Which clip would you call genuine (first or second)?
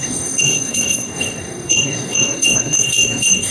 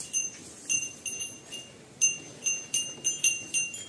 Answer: second